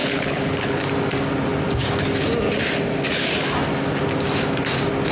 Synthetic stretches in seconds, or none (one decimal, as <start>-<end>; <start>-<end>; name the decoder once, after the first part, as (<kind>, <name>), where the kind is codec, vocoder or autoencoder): 0.0-0.8 (codec, HILCodec)